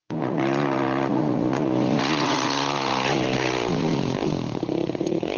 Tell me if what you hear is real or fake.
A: fake